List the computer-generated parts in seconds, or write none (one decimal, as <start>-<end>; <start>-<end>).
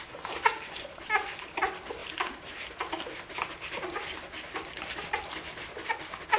none